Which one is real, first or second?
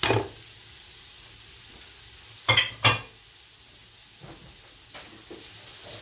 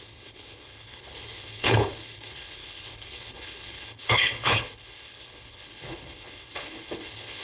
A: first